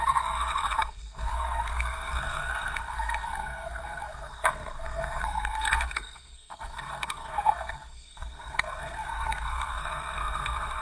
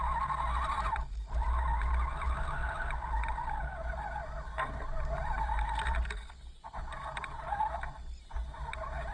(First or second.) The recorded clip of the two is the second